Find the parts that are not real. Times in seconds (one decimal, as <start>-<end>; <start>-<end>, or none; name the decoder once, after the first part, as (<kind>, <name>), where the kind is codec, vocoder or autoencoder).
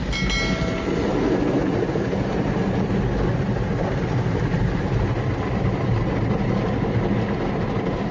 none